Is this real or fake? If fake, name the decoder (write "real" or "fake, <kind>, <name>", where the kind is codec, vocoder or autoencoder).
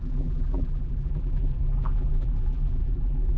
fake, vocoder, BigVGAN v2